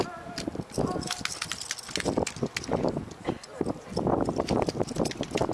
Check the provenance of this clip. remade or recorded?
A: recorded